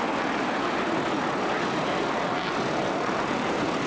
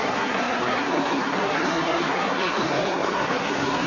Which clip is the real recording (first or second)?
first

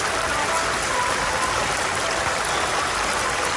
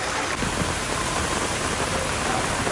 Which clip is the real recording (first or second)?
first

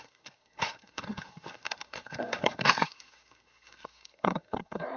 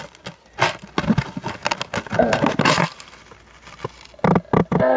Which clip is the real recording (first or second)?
second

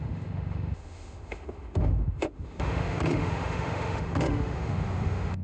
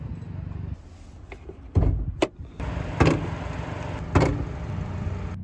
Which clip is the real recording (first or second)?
second